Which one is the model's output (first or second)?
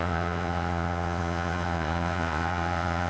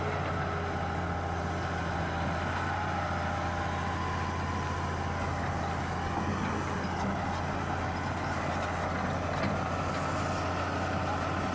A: first